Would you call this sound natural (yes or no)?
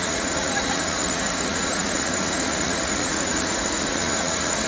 no